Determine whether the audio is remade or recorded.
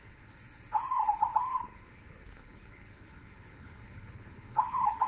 remade